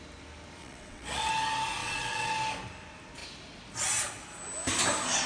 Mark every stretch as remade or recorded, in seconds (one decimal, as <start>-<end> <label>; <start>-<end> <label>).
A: 0.0-0.6 recorded; 0.6-1.3 remade; 1.3-1.8 recorded; 1.8-2.3 remade; 2.3-5.3 recorded